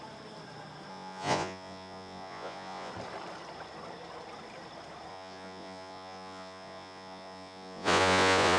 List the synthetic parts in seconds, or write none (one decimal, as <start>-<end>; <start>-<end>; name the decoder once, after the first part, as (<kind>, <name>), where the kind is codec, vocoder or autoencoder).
0.9-2.9 (vocoder, Vocos); 5.1-8.6